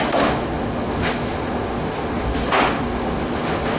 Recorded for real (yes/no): no